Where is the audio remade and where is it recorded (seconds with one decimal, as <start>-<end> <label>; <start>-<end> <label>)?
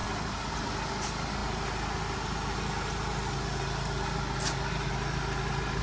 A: 0.0-5.8 recorded